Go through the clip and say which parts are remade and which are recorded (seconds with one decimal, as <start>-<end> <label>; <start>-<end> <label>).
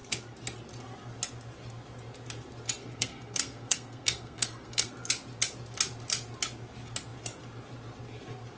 0.0-2.8 recorded; 2.8-4.9 remade; 4.9-8.6 recorded